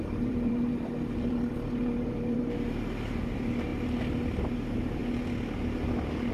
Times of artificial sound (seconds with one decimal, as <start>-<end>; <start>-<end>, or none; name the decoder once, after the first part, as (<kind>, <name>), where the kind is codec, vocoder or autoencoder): 0.0-0.7 (vocoder, BigVGAN v2); 1.2-5.0